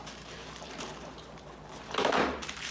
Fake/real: fake